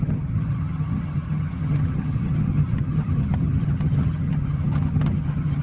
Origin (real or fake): fake